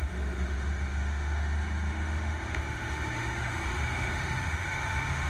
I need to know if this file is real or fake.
fake